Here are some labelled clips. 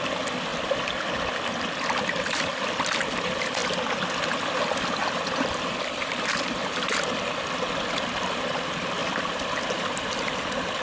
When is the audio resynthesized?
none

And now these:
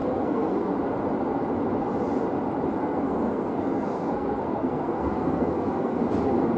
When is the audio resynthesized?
0.0-0.7 (codec, SNAC); 2.8-6.0

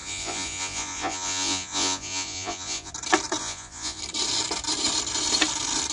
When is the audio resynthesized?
0.0-2.9 (vocoder, Vocos); 3.4-4.0